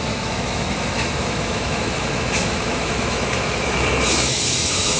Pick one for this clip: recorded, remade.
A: remade